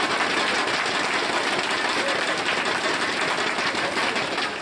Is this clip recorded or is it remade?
recorded